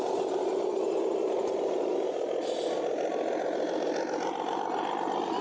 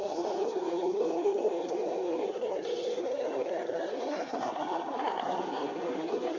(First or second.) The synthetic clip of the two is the second